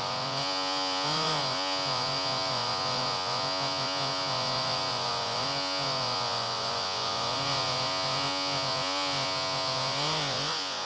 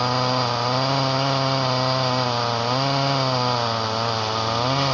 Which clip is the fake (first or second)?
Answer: first